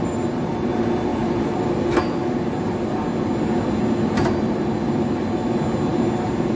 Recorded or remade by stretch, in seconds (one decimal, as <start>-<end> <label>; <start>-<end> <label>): 0.0-6.6 recorded